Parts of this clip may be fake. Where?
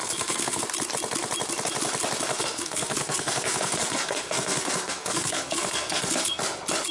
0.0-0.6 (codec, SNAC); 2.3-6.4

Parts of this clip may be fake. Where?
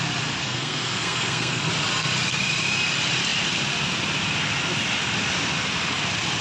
0.4-1.7 (codec, SNAC)